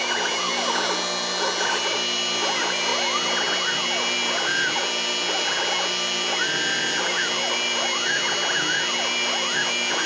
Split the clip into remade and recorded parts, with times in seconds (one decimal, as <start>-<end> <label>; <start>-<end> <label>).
0.0-10.1 recorded